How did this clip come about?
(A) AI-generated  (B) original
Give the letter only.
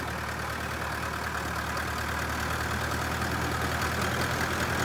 B